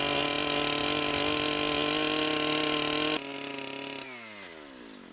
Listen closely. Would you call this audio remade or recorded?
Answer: recorded